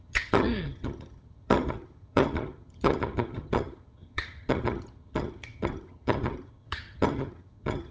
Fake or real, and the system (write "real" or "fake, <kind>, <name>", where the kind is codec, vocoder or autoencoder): fake, vocoder, HiFi-GAN